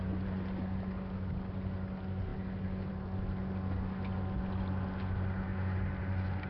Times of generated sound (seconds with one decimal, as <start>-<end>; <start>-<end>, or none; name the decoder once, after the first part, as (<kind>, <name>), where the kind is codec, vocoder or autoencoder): none